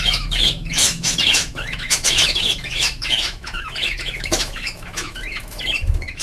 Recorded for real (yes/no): no